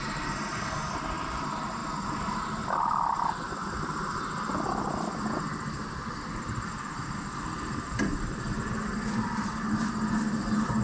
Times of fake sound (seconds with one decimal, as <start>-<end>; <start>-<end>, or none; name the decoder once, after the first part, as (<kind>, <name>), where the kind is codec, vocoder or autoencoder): none